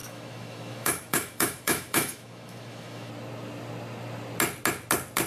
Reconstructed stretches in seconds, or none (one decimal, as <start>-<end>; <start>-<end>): 0.0-3.1